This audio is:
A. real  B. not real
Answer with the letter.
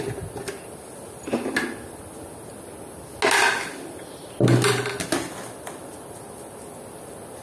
A